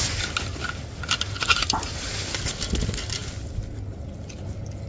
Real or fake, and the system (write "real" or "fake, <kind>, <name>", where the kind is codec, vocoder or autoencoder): real